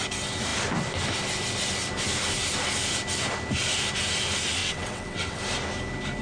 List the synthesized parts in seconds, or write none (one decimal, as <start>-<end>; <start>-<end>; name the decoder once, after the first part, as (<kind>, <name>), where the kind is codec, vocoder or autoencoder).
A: 4.6-5.4 (vocoder, WaveNeXt)